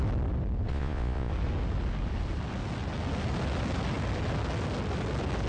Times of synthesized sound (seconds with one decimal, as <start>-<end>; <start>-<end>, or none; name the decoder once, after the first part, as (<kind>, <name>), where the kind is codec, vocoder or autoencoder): 0.7-1.3 (vocoder, Vocos)